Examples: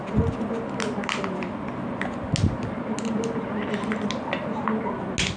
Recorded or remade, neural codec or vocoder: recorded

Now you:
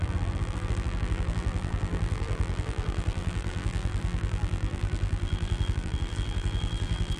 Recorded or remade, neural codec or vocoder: remade, vocoder, BigVGAN v2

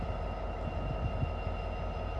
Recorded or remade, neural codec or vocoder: recorded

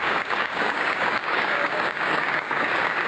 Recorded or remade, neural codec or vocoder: remade, codec, DAC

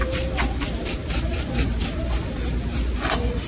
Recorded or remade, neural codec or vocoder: remade, vocoder, BigVGAN v2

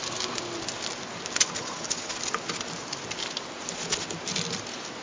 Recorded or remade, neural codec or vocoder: recorded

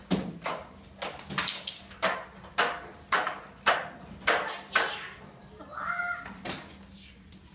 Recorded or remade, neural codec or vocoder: recorded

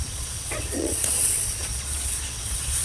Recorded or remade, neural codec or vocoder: remade, vocoder, Vocos